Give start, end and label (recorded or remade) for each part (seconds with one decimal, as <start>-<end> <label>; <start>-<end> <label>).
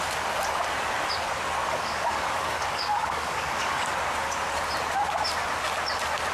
0.0-1.6 recorded; 1.6-3.8 remade; 3.8-6.3 recorded